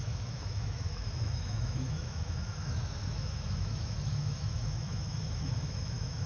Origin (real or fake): fake